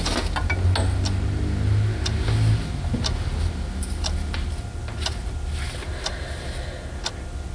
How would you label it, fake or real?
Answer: real